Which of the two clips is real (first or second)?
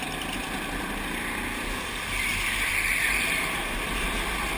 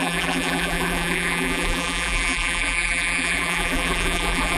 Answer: first